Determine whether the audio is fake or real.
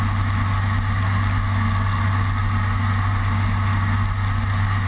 real